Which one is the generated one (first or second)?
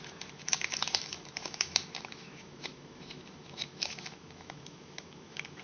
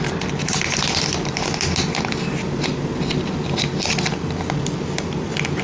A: first